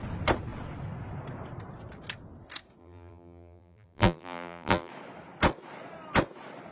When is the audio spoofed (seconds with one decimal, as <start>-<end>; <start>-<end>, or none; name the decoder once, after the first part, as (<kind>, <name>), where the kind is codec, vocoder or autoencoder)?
2.8-4.9 (vocoder, BigVGAN v2)